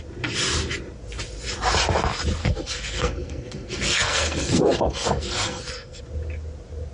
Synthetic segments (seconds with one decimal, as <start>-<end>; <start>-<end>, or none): 2.4-6.0

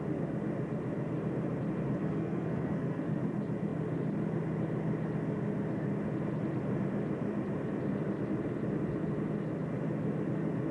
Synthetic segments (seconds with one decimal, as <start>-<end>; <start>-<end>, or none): 2.0-3.0

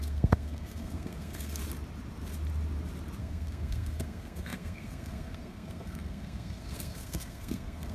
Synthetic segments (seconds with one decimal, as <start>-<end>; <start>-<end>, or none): 0.0-1.6; 3.2-7.9

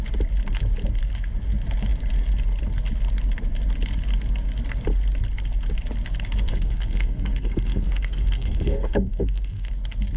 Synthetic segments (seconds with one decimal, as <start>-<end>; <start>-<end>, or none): 6.5-9.7